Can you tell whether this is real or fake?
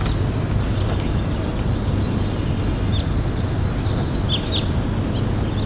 real